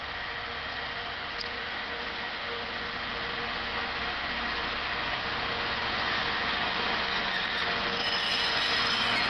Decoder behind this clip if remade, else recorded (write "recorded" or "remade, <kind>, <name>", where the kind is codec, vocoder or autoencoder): remade, vocoder, Vocos